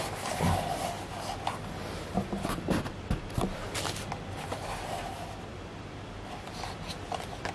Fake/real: real